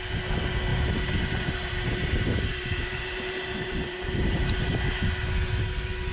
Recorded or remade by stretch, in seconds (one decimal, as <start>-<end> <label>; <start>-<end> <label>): 0.0-0.7 recorded; 0.7-4.4 remade; 4.4-6.1 recorded

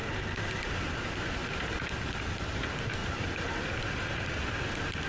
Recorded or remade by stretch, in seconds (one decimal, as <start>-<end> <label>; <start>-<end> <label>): 0.0-0.5 remade; 0.5-1.4 recorded; 1.4-1.9 remade; 1.9-3.0 recorded; 3.0-4.5 remade; 4.5-5.1 recorded

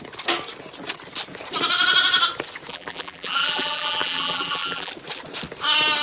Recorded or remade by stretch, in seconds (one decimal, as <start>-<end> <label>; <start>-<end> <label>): 0.0-2.7 recorded; 2.7-4.9 remade; 4.9-6.0 recorded